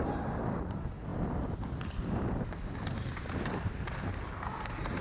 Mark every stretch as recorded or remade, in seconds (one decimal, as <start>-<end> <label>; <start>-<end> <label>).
0.0-5.0 recorded